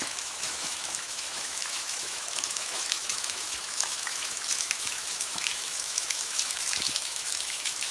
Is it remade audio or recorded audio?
remade